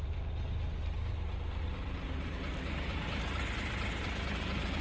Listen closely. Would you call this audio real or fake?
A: fake